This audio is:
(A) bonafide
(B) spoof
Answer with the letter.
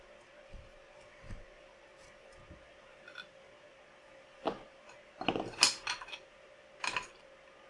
A